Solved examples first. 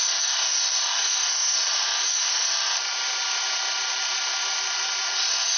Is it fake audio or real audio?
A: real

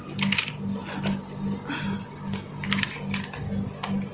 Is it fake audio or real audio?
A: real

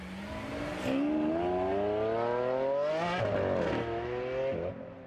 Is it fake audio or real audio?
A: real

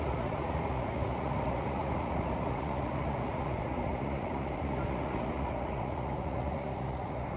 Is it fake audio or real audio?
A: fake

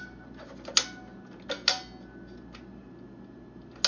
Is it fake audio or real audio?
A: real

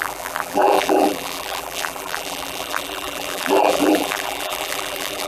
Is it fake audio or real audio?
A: fake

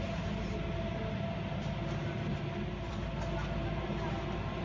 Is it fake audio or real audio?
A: real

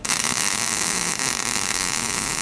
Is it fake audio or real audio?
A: fake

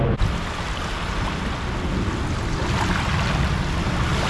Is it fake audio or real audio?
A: real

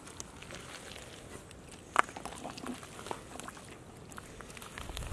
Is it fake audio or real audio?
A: real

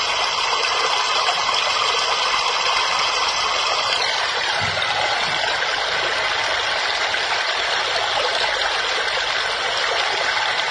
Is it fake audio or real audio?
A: fake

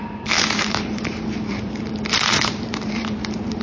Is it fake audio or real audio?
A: fake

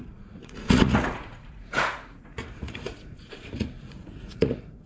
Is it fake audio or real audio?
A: fake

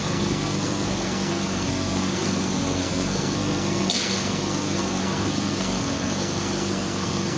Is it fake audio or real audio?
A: fake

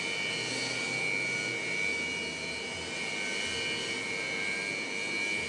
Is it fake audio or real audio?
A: real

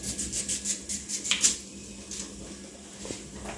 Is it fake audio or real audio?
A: real